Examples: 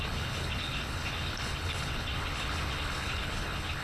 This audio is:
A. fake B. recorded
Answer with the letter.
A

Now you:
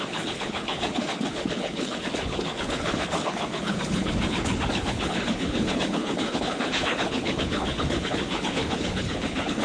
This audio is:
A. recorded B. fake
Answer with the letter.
B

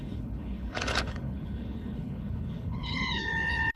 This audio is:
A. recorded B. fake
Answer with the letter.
B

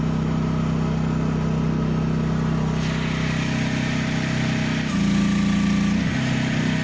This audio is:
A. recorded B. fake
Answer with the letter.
A